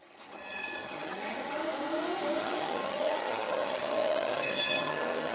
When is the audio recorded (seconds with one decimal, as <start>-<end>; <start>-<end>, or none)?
1.6-2.4